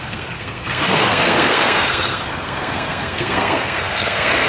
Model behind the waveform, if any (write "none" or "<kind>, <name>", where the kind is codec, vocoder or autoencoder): codec, SNAC